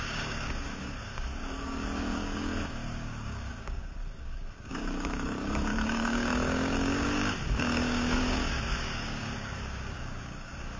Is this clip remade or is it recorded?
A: remade